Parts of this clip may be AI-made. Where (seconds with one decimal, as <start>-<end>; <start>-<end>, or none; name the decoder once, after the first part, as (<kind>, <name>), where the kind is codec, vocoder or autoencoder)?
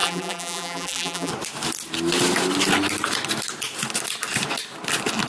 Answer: 0.0-1.3 (vocoder, BigVGAN v2)